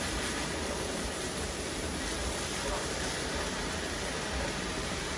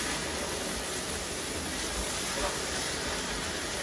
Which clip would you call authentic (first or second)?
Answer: second